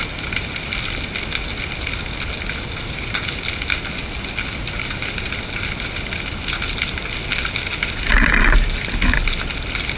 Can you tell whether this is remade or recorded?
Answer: recorded